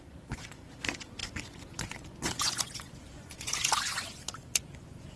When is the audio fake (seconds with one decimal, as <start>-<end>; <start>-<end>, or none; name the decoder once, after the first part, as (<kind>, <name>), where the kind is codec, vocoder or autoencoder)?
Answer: 0.0-5.2 (vocoder, Vocos)